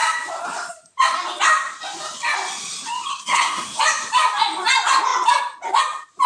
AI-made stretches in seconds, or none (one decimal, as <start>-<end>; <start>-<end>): 3.1-3.8